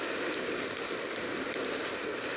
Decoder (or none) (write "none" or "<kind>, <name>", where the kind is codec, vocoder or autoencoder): none